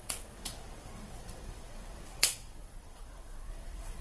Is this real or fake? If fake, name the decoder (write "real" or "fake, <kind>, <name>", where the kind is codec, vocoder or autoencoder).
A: fake, vocoder, WaveNeXt